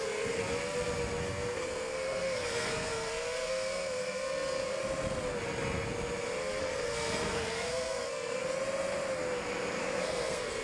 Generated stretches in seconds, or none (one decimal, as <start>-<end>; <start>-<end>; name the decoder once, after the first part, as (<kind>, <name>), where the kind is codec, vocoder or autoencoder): 0.0-0.4 (codec, SNAC); 1.2-4.8; 6.6-8.4; 9.8-10.6